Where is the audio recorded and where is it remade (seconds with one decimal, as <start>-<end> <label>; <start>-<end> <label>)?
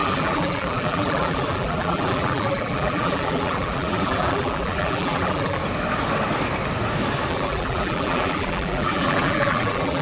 0.0-5.6 remade; 5.6-7.3 recorded; 7.3-10.0 remade